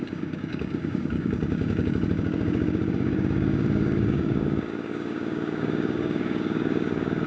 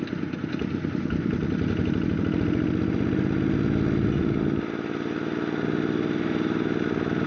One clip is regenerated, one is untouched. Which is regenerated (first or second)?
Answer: first